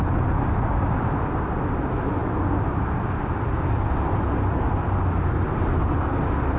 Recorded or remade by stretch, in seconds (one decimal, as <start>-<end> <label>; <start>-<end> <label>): 0.0-6.6 recorded